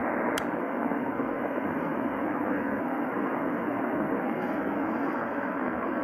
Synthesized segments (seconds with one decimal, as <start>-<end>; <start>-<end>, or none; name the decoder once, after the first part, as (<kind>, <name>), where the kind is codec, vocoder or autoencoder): 0.6-6.0 (codec, SNAC)